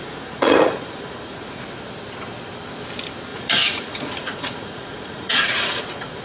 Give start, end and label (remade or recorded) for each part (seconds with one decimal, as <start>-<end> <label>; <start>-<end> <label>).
0.0-1.6 remade; 1.6-3.3 recorded; 3.3-6.2 remade